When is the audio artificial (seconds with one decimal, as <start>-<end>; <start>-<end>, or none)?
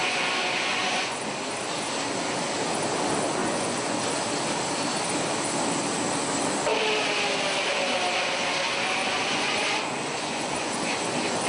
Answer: 0.0-1.3; 3.4-4.0; 9.0-11.5